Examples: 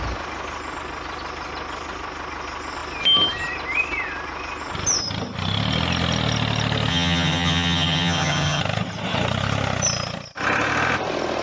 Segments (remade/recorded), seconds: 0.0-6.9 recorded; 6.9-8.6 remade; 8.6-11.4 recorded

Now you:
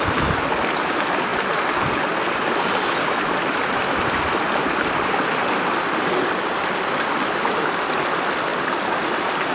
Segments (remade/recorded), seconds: 0.0-9.5 recorded

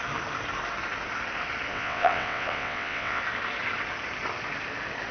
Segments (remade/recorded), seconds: 0.0-1.7 recorded; 1.7-3.2 remade; 3.2-5.1 recorded

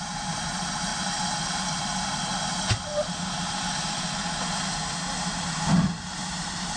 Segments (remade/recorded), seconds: 0.0-6.8 remade

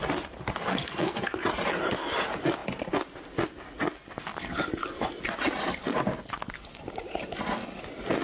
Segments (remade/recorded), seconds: 0.0-0.7 recorded; 0.7-1.4 remade; 1.4-8.2 recorded

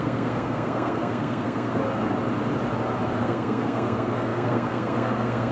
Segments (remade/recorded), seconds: 0.0-1.8 remade; 1.8-3.2 recorded; 3.2-5.5 remade

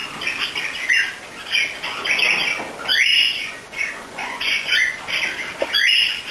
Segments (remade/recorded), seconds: 0.0-3.1 recorded; 3.1-5.0 remade; 5.0-6.3 recorded

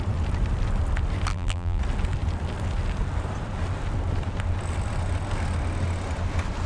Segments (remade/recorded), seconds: 0.0-1.3 recorded; 1.3-1.8 remade; 1.8-6.7 recorded